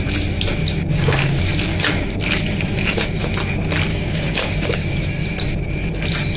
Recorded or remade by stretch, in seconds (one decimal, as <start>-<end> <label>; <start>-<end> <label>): 0.0-0.6 recorded; 0.6-1.4 remade; 1.4-3.9 recorded; 3.9-5.0 remade; 5.0-6.4 recorded